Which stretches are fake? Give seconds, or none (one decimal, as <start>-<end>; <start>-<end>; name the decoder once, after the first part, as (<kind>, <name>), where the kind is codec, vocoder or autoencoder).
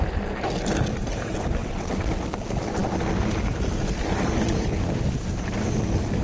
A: 1.6-2.1 (vocoder, WaveNeXt)